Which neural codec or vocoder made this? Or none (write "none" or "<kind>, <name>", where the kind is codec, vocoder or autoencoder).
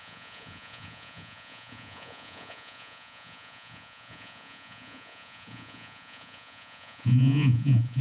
vocoder, Vocos